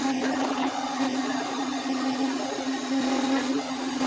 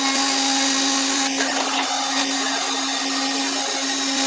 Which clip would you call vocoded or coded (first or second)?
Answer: first